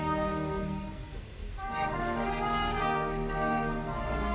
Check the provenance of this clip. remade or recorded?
remade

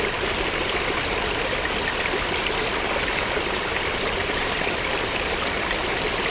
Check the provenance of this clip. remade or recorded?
recorded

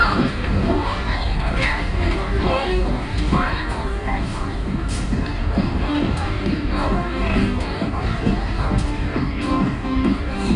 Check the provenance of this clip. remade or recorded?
remade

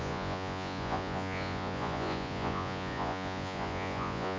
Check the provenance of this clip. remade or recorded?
remade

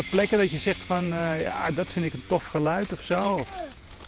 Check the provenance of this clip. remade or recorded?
remade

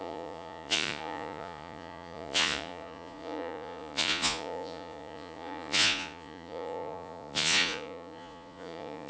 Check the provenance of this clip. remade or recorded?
remade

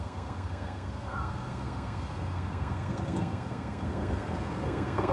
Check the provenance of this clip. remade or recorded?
remade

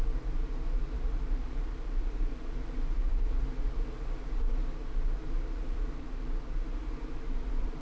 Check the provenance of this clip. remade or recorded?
remade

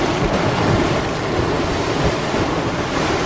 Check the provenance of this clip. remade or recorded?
recorded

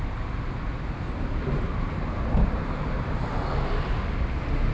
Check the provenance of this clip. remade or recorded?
recorded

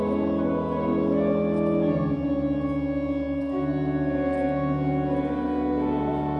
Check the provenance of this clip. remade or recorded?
recorded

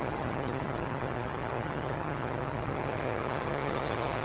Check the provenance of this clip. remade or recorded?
remade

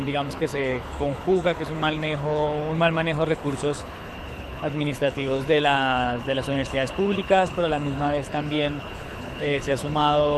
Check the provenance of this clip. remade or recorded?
remade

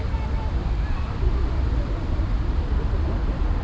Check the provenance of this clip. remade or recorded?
recorded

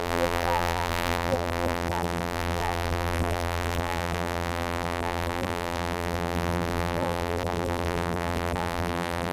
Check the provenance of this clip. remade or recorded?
remade